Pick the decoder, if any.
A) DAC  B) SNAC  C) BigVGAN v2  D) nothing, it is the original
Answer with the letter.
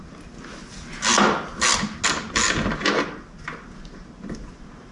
D